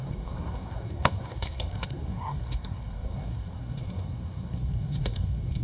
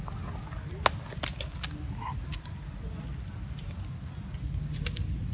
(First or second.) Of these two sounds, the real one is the second